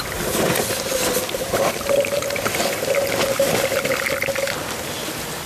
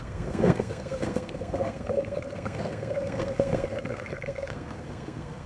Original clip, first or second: first